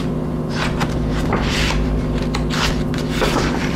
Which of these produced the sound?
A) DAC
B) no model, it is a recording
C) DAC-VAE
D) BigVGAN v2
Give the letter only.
D